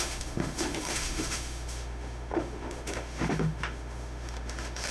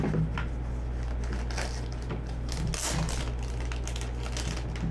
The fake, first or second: first